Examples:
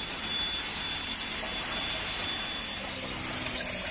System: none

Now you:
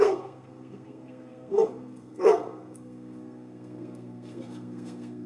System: codec, SNAC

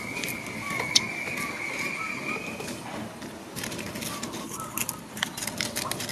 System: none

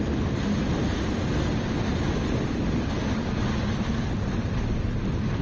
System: none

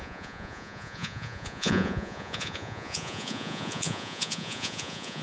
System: vocoder, Vocos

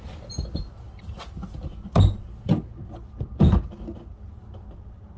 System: none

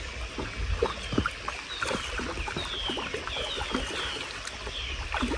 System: none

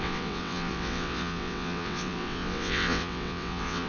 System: vocoder, WaveNeXt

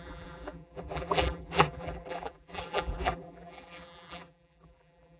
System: vocoder, BigVGAN v2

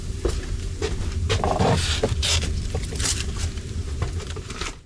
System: vocoder, BigVGAN v2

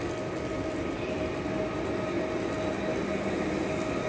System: none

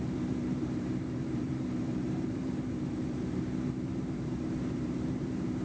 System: vocoder, BigVGAN v2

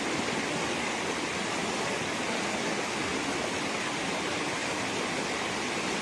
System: none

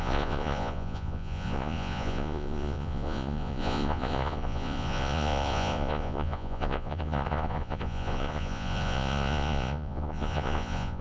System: vocoder, Vocos